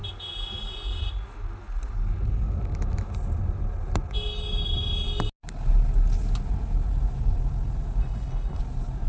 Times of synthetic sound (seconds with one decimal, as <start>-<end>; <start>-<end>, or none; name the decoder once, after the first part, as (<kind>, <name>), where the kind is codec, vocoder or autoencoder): 8.0-8.6 (codec, HILCodec)